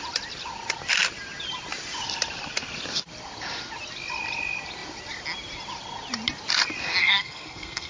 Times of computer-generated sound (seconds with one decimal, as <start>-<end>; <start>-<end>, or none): 7.0-7.9